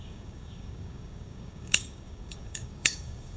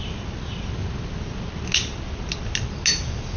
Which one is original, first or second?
second